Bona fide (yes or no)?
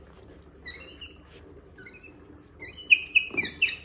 yes